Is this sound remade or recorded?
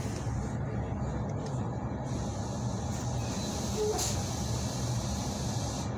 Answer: recorded